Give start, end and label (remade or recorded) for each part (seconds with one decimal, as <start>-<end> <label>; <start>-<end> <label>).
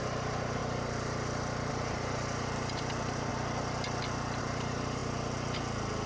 0.0-0.6 remade; 0.6-1.7 recorded; 1.7-3.3 remade; 3.3-4.4 recorded; 4.4-5.0 remade; 5.0-6.1 recorded